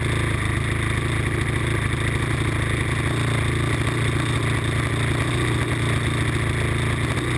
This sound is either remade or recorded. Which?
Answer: recorded